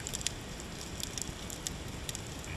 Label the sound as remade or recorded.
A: recorded